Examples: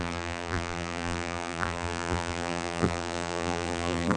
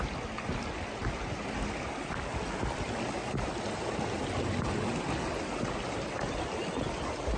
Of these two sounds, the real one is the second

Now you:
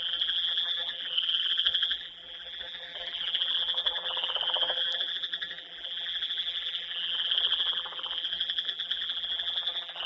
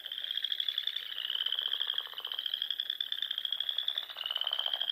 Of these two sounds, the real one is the second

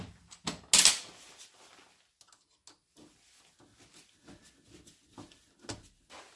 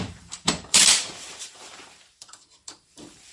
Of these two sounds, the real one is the first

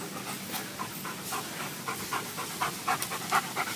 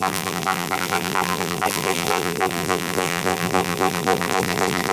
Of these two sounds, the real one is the first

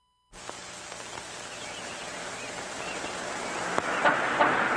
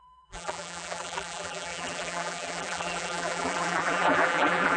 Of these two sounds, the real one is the first